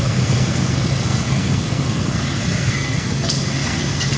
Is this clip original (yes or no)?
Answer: no